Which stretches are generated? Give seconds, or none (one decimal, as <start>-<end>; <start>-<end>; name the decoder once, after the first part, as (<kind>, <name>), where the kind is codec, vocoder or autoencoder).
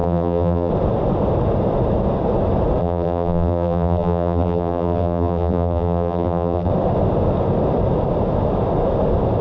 0.0-0.7 (vocoder, BigVGAN v2); 2.8-6.7